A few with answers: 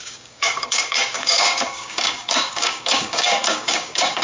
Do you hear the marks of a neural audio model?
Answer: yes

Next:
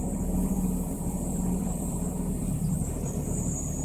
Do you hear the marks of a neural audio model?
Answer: yes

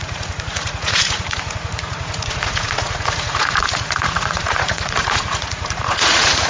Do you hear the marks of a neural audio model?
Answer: yes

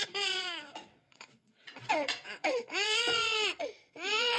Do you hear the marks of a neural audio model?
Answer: yes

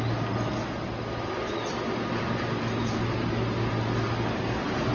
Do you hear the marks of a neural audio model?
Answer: no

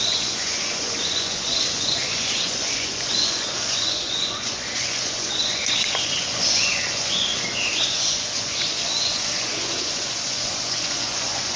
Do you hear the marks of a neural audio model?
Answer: yes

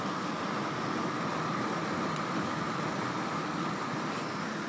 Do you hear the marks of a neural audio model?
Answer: no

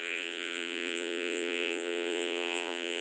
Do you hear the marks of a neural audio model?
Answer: yes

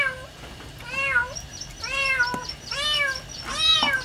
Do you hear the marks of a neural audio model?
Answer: no